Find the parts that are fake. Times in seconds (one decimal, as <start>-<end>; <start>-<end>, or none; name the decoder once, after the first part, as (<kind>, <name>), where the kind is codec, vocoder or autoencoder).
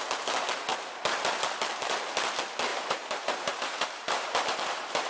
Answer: 2.7-5.1 (vocoder, BigVGAN v2)